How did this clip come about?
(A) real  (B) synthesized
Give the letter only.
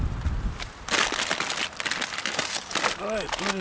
A